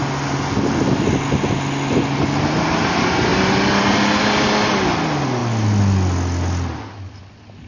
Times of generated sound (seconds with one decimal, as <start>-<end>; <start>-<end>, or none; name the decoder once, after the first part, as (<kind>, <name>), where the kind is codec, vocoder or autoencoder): none